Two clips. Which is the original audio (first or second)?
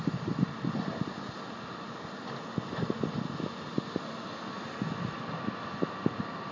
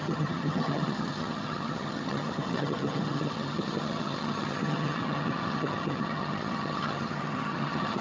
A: first